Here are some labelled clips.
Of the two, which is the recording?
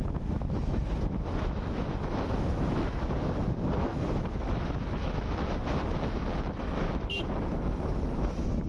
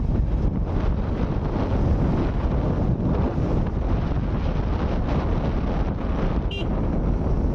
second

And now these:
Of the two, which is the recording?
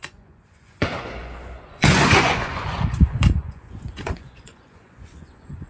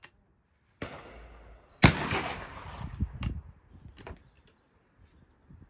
second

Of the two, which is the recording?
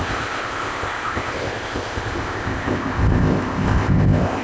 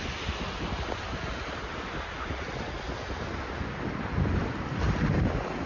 second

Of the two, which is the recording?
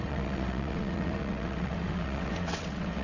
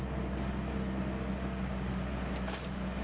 second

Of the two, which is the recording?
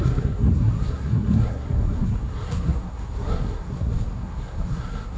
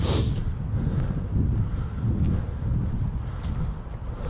second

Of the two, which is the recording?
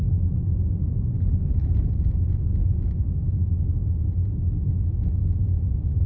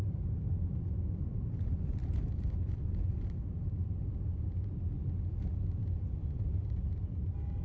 first